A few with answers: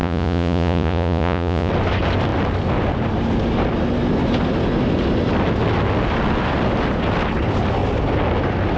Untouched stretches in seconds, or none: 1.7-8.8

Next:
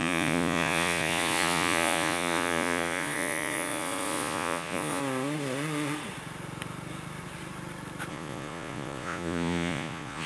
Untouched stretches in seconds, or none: 5.0-8.1

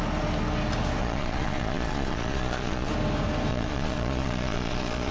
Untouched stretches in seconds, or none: 0.0-1.0; 2.9-3.5

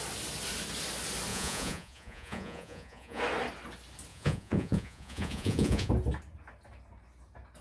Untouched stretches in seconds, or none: 0.0-1.3; 3.2-4.1; 5.9-7.6

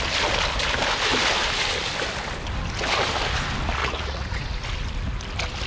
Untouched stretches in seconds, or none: 0.0-3.8; 4.4-5.7